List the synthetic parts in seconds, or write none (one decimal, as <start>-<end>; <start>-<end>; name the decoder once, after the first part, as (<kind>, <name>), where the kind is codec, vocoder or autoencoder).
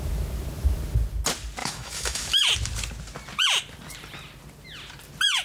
1.6-2.5 (autoencoder, DAC-VAE)